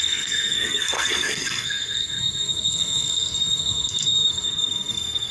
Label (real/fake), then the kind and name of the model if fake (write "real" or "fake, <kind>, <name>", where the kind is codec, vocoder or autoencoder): fake, codec, SNAC